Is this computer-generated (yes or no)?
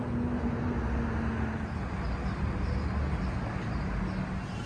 no